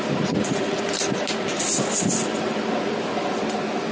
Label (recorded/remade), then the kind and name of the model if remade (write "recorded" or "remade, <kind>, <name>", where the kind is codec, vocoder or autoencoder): recorded